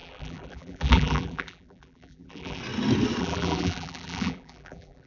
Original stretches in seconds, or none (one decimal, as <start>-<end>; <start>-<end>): 2.6-3.2